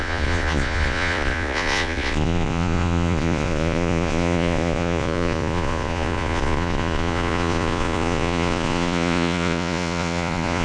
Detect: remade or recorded remade